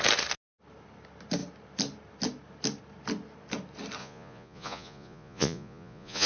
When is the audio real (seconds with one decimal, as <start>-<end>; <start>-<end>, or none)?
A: 0.0-4.0